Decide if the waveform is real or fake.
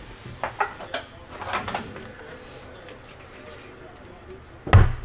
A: real